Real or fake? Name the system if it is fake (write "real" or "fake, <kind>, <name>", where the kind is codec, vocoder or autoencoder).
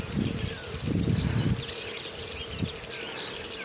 real